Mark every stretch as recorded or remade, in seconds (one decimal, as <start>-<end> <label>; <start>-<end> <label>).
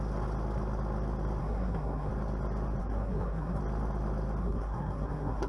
0.0-1.4 recorded; 1.4-2.1 remade; 2.1-2.8 recorded; 2.8-3.6 remade; 3.6-4.4 recorded; 4.4-5.5 remade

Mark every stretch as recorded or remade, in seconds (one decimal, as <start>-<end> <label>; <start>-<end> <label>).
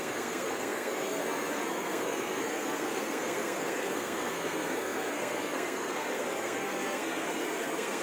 0.0-8.0 remade